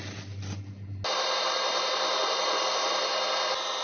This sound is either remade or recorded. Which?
recorded